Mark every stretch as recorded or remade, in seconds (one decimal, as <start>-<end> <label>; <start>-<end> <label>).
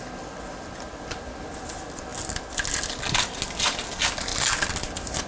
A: 0.0-5.3 recorded